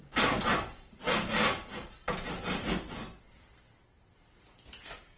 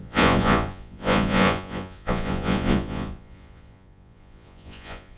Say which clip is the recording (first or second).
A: first